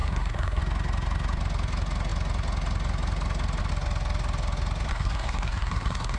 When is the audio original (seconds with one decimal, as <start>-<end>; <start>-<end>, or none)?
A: 0.6-4.9